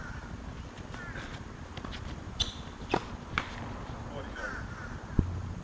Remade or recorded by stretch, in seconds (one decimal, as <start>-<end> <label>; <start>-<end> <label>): 0.0-5.6 recorded